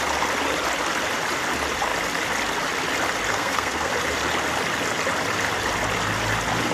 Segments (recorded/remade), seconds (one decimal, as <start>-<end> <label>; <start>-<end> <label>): 0.0-3.3 recorded; 3.3-3.9 remade; 3.9-6.7 recorded